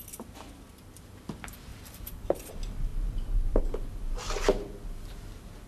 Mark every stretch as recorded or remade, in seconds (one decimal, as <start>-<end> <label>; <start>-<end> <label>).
0.0-1.7 recorded; 1.7-2.5 remade; 2.5-5.7 recorded